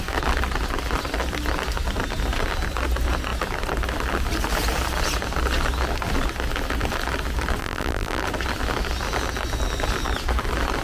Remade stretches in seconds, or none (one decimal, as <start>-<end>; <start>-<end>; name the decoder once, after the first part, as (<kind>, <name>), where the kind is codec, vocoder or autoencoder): 7.6-8.2 (vocoder, BigVGAN v2)